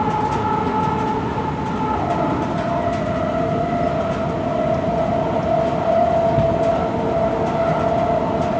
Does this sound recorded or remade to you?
recorded